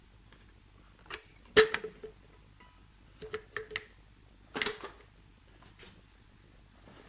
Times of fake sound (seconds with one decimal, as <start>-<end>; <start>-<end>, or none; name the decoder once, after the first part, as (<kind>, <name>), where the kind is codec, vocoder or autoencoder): none